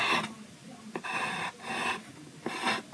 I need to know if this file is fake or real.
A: real